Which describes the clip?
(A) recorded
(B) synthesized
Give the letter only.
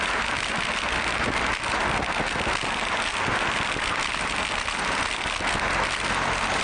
A